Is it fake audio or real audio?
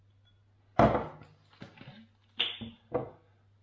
real